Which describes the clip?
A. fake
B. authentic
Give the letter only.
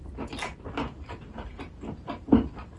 B